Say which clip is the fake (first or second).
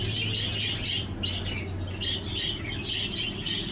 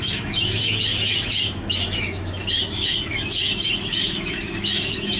second